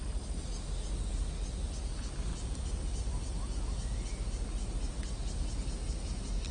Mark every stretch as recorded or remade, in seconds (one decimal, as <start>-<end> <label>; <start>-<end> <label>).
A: 0.0-6.5 recorded